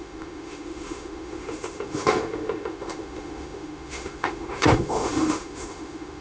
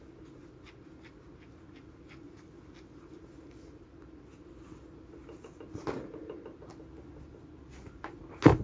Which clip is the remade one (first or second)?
first